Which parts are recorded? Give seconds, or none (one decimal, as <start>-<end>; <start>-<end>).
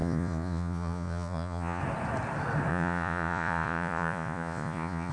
1.8-2.7